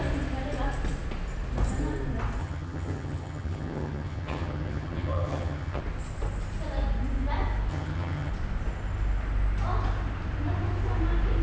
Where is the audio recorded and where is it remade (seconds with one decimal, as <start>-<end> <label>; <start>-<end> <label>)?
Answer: 0.0-2.4 recorded; 2.4-5.8 remade; 5.8-7.7 recorded; 7.7-8.3 remade; 8.3-11.4 recorded